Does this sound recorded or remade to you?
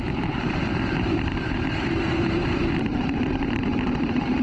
remade